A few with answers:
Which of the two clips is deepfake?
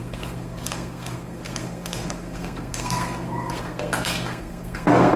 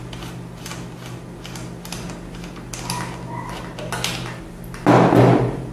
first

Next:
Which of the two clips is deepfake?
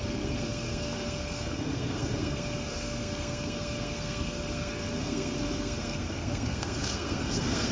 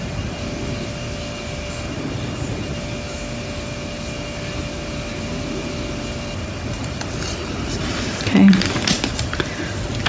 first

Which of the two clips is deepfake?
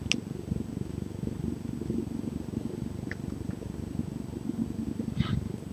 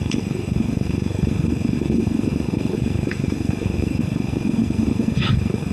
second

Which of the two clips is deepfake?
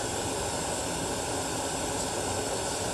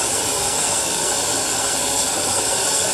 second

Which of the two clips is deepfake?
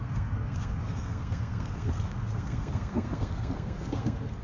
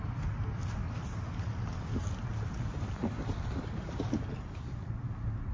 first